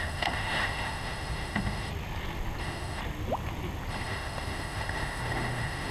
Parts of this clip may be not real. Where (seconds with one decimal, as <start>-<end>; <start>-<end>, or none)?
0.0-1.9; 2.6-3.0; 3.9-5.9